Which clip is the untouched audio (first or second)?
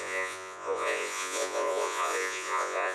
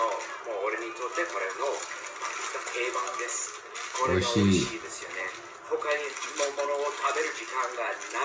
second